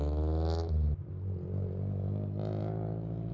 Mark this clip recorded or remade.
recorded